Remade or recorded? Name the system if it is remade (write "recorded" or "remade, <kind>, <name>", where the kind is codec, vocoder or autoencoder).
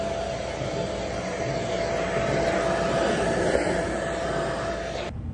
recorded